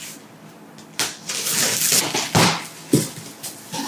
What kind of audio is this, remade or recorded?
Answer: recorded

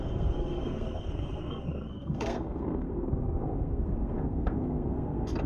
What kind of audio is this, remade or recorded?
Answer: remade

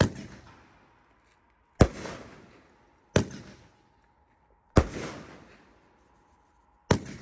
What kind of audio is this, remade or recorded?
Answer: recorded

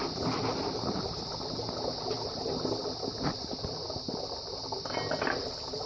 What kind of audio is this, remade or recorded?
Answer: recorded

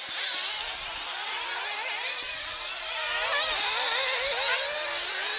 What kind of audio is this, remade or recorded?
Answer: recorded